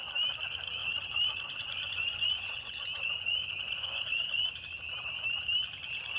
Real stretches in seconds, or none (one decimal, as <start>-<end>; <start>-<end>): 0.0-0.8; 4.5-6.2